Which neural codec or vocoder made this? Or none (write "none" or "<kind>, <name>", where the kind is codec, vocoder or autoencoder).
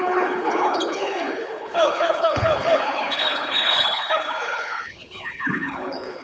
codec, HILCodec